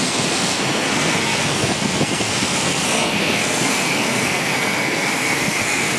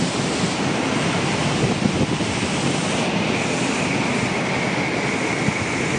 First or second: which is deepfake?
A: first